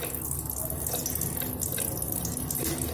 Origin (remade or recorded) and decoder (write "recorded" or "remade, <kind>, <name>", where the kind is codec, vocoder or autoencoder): recorded